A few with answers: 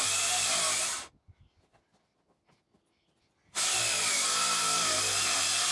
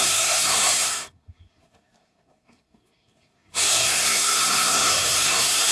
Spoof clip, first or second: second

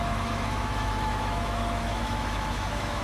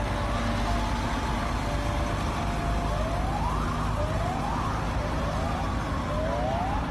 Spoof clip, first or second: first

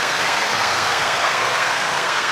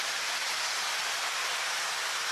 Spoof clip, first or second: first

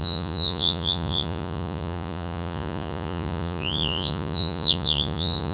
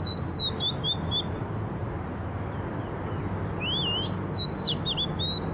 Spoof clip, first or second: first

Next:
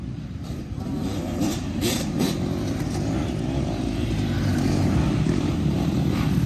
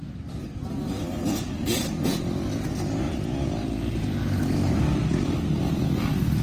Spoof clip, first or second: first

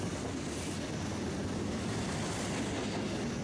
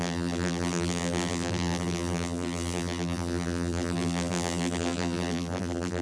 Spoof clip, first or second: second